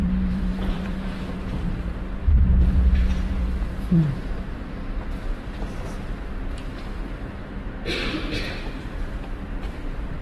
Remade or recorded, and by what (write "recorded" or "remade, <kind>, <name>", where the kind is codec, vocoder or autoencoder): remade, vocoder, BigVGAN v2